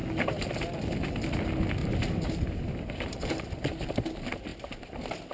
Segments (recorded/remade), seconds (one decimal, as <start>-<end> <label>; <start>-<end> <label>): 0.0-1.8 recorded; 1.8-3.4 remade; 3.4-5.3 recorded